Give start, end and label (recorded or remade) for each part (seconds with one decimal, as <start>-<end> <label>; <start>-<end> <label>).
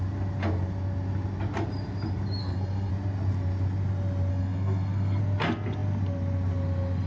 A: 0.0-2.4 recorded; 2.4-2.9 remade; 2.9-4.3 recorded; 4.3-5.2 remade; 5.2-7.1 recorded